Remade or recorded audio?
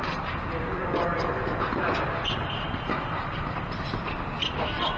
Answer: recorded